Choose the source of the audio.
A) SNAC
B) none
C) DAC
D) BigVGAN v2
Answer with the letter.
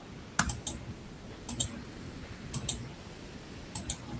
B